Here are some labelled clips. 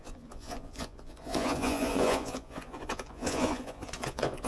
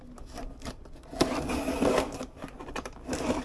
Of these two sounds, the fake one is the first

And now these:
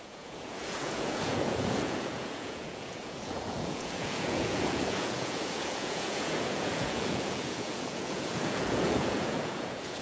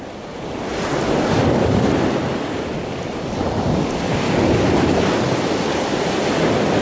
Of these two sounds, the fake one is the first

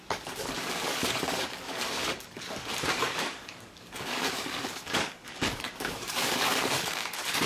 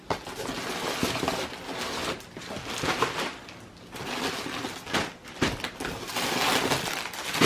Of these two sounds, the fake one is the first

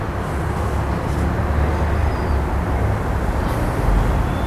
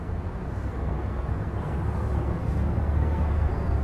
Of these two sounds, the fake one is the second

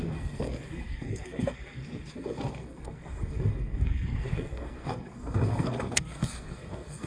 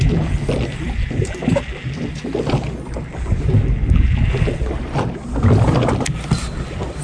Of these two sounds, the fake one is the first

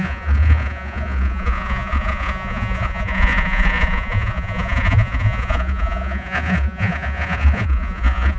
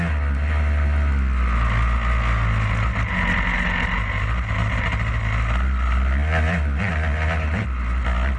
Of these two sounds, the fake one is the first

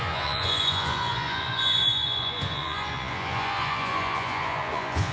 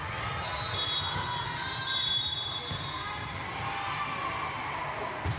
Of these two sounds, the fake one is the first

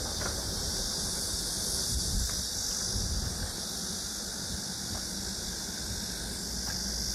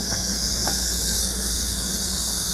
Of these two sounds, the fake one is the second